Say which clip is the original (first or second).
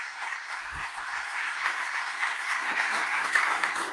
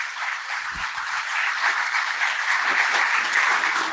second